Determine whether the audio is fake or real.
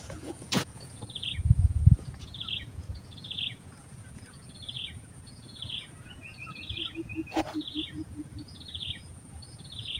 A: fake